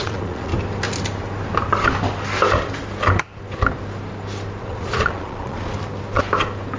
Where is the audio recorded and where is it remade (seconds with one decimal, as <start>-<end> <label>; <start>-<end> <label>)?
0.0-0.5 remade; 0.5-4.6 recorded; 4.6-5.7 remade; 5.7-6.8 recorded